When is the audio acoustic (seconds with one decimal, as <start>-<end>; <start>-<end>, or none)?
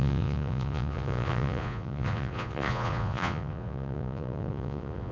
none